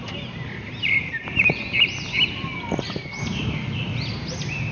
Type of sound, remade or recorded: recorded